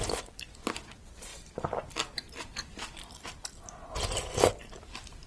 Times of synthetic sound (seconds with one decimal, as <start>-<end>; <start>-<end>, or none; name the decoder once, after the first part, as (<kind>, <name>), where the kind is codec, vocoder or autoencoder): none